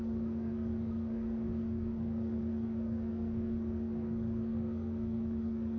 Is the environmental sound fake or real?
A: fake